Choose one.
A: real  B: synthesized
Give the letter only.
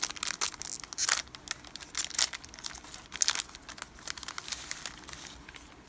A